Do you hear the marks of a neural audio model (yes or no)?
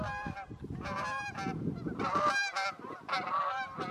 no